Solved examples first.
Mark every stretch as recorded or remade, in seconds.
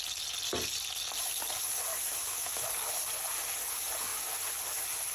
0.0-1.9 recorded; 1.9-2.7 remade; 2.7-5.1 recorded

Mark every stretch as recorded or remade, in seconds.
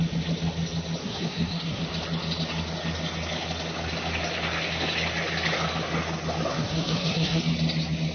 0.0-1.0 recorded; 1.0-1.8 remade; 1.8-6.5 recorded; 6.5-7.4 remade; 7.4-8.1 recorded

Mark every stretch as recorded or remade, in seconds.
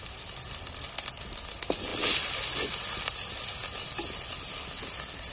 0.0-5.3 recorded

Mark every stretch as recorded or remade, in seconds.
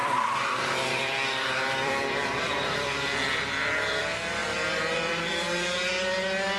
0.0-4.0 remade; 4.0-6.6 recorded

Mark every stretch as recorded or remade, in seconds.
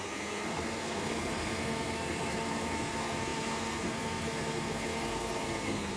0.0-6.0 remade